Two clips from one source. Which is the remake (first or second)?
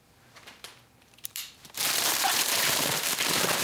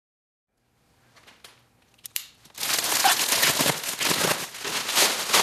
first